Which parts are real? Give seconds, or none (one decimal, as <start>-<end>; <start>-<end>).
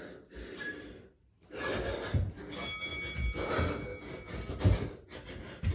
0.0-0.5; 1.7-5.7